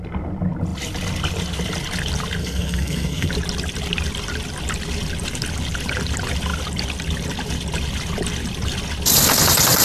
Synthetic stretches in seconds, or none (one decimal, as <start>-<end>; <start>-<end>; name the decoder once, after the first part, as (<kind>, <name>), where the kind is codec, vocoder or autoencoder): 2.4-3.3 (codec, SNAC)